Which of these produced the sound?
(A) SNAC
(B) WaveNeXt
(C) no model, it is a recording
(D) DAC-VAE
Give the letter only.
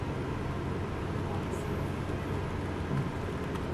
C